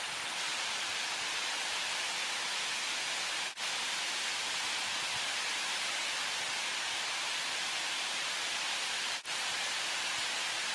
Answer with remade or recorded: recorded